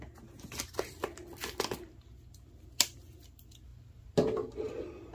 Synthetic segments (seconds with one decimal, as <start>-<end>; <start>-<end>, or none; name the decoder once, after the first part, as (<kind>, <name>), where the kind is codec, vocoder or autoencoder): none